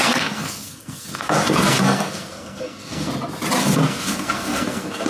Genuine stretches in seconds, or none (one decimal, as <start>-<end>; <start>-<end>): 3.1-3.6